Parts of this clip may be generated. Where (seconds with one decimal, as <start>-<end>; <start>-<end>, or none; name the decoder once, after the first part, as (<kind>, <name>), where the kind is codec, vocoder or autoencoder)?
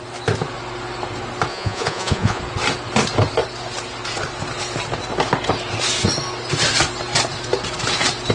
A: 1.5-2.4 (vocoder, Vocos)